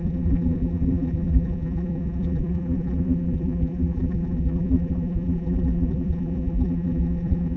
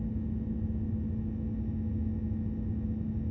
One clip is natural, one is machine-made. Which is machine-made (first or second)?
first